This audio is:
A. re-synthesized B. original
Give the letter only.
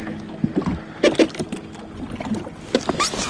B